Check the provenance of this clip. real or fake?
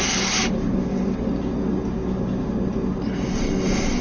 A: real